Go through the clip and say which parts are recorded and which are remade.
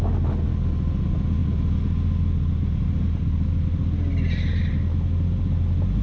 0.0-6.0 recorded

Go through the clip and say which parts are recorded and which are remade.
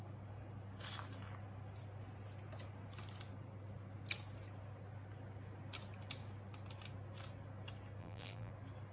0.0-8.0 recorded; 8.0-8.5 remade; 8.5-8.9 recorded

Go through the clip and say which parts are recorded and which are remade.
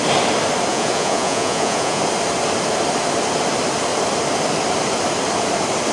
0.0-0.7 recorded; 0.7-2.0 remade; 2.0-5.9 recorded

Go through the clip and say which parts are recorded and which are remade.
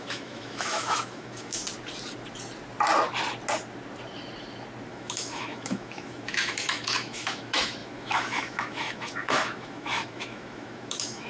0.0-1.6 remade; 1.6-4.9 recorded; 4.9-11.3 remade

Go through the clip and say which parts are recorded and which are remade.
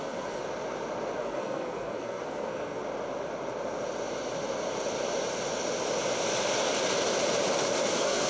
0.0-0.4 remade; 0.4-1.2 recorded; 1.2-2.8 remade; 2.8-7.8 recorded; 7.8-8.3 remade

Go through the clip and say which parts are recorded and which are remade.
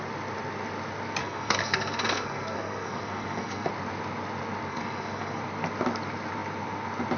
0.0-1.2 recorded; 1.2-3.7 remade; 3.7-4.7 recorded; 4.7-5.4 remade; 5.4-7.2 recorded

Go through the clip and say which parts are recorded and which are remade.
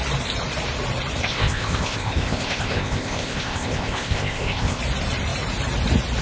0.0-1.2 recorded; 1.2-4.8 remade; 4.8-6.2 recorded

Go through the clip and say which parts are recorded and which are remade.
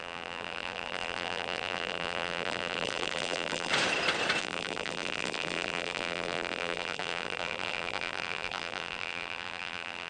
0.0-3.7 remade; 3.7-4.4 recorded; 4.4-10.1 remade